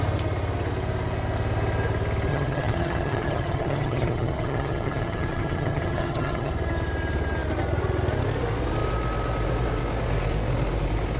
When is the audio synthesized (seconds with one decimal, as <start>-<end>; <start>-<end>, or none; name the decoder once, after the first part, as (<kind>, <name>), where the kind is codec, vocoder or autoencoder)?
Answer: 2.3-6.5 (vocoder, HiFi-GAN)